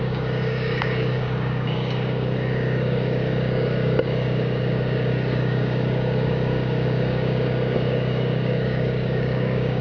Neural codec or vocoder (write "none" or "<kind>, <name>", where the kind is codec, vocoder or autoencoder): codec, DAC